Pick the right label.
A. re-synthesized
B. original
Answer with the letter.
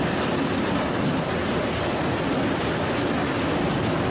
B